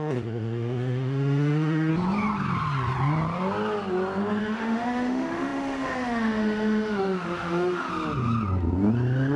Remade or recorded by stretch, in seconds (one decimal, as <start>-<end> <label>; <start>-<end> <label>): 0.0-1.9 remade; 1.9-4.4 recorded; 4.4-7.9 remade; 7.9-9.4 recorded